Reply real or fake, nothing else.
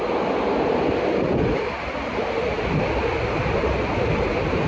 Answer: real